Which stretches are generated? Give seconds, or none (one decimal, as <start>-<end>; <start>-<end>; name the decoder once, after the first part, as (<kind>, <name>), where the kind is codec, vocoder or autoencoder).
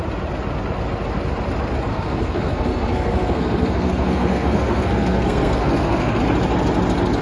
1.9-6.2 (codec, SNAC)